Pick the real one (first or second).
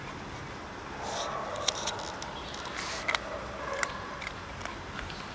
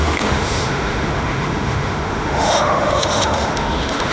first